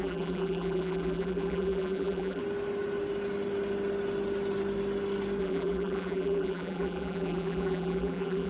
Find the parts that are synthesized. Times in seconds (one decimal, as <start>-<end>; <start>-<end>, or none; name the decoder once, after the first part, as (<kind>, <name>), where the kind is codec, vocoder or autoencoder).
0.0-2.4 (vocoder, BigVGAN v2); 5.4-8.5